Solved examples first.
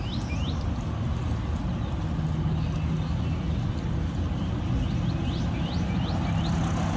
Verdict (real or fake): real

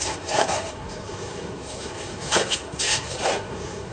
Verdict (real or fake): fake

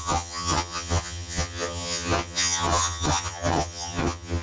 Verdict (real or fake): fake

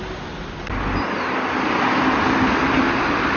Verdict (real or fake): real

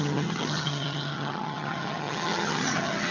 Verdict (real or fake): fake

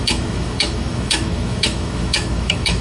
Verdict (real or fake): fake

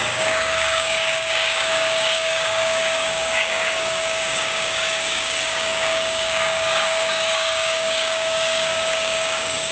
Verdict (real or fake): fake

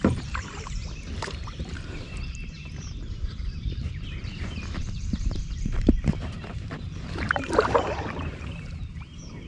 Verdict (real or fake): fake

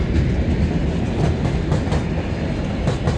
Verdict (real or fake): real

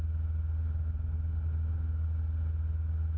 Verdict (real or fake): real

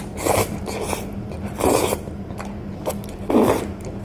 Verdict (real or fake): real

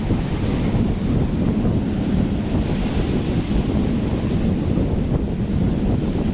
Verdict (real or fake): real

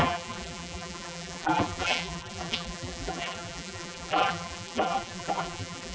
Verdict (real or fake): fake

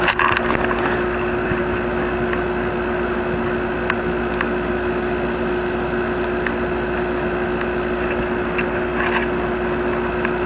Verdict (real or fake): real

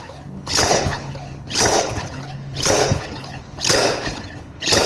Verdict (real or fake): fake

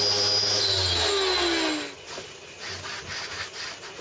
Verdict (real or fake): real